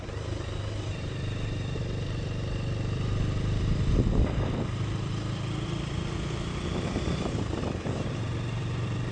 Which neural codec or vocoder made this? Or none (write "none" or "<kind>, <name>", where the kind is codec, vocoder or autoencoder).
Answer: vocoder, BigVGAN v2